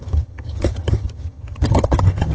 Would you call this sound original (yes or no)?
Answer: no